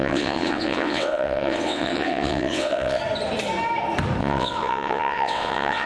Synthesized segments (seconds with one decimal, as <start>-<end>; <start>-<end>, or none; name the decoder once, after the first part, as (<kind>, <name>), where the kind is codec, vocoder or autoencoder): 0.0-3.0 (vocoder, WaveNeXt); 4.2-5.9